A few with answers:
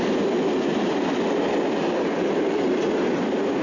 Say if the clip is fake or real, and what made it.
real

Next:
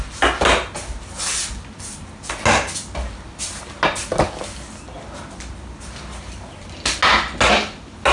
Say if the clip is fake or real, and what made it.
real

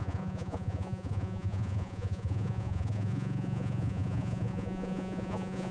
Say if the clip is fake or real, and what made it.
fake, vocoder, Vocos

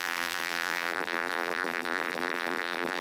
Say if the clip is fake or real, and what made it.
fake, vocoder, BigVGAN v2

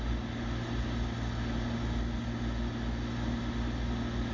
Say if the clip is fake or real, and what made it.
real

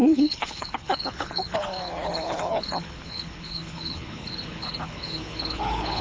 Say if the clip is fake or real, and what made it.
fake, codec, HILCodec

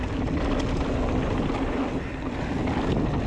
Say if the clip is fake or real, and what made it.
real